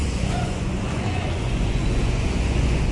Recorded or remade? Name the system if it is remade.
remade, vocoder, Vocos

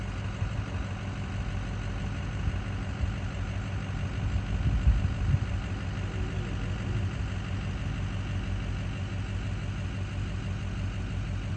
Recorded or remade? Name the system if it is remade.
recorded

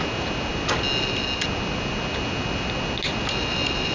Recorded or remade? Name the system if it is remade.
recorded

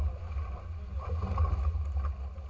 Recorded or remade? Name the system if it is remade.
recorded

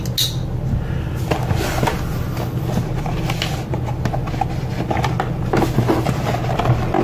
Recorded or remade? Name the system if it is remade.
recorded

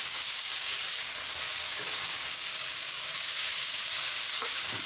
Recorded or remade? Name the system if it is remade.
remade, codec, DAC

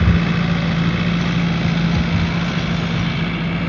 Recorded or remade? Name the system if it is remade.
recorded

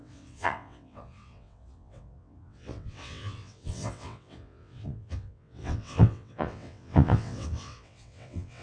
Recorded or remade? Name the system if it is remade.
remade, vocoder, WaveNeXt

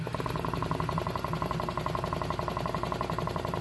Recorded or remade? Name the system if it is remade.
recorded